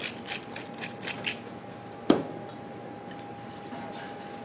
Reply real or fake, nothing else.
real